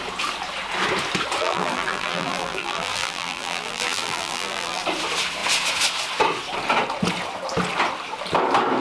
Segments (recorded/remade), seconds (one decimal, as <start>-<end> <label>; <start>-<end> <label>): 0.0-1.4 recorded; 1.4-4.8 remade; 4.8-8.8 recorded

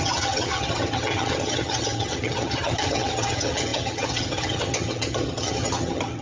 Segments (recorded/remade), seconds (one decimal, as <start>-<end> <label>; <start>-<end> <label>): 0.0-6.2 remade

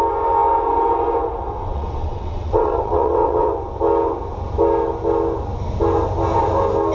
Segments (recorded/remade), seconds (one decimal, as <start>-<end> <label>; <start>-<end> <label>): 0.0-1.4 recorded; 1.4-3.5 remade; 3.5-6.9 recorded